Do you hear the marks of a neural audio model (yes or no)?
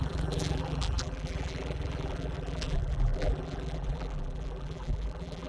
yes